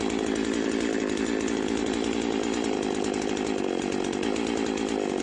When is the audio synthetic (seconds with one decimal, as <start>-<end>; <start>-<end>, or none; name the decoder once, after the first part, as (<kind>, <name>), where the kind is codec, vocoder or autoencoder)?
none